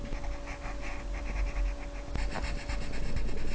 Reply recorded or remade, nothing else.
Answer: recorded